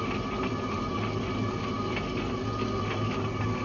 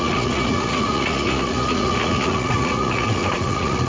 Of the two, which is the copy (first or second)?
second